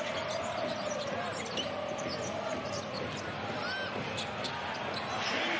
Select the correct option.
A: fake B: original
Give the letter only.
B